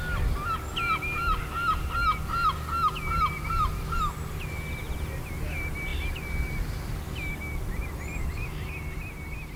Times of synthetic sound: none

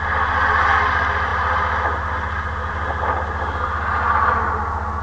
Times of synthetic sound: none